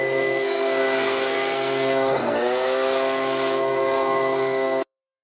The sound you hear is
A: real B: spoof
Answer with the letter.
B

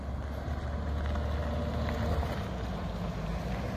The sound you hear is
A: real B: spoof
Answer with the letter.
A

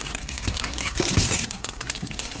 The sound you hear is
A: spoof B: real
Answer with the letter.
A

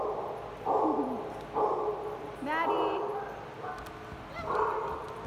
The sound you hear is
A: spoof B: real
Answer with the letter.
B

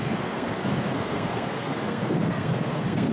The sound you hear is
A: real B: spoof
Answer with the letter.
B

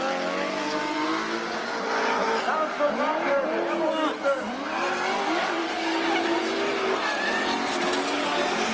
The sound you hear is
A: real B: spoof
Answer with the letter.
A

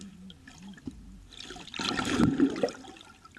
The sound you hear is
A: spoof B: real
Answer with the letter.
B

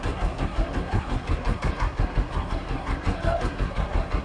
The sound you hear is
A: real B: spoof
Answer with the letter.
B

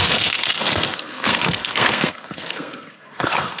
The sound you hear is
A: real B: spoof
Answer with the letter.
B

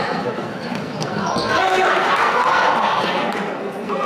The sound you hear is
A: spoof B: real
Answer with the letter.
A